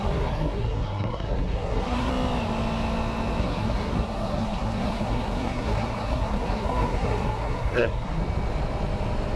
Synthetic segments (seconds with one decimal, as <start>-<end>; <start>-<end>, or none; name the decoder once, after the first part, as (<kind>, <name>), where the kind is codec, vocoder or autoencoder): 0.0-2.1 (codec, SNAC); 3.4-8.2